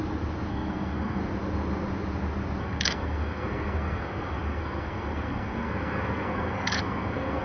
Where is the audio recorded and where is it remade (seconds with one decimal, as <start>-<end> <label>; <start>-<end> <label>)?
0.0-0.5 recorded; 0.5-1.2 remade; 1.2-2.6 recorded; 2.6-7.4 remade